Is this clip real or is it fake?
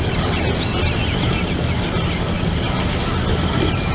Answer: real